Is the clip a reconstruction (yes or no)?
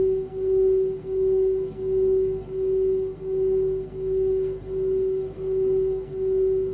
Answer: yes